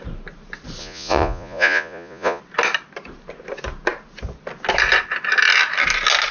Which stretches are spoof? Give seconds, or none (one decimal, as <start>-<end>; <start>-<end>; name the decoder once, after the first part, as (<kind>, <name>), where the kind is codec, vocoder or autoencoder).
0.8-2.4 (vocoder, Vocos)